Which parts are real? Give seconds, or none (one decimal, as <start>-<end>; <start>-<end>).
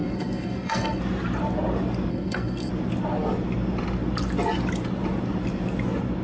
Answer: 1.0-2.1; 2.7-6.2